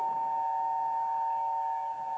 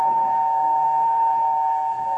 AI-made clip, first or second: second